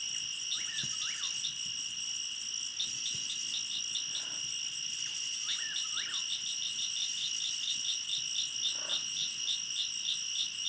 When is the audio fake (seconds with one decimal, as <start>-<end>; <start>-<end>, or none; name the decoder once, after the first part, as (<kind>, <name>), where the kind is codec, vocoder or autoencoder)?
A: none